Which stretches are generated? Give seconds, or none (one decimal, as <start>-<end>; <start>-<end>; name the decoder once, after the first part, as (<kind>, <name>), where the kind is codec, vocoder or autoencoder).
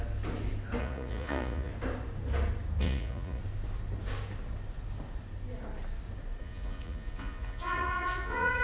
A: 0.8-1.7 (vocoder, Vocos); 2.8-3.4; 6.4-8.6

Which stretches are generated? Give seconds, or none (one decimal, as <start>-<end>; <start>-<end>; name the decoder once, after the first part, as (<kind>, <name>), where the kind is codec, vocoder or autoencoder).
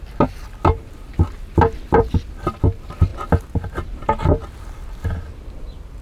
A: none